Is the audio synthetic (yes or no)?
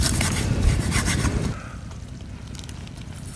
yes